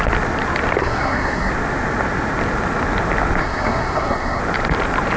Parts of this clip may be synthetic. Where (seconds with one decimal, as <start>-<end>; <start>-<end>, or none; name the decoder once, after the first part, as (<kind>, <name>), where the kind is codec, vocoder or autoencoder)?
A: 0.8-1.5 (codec, SNAC); 3.4-4.4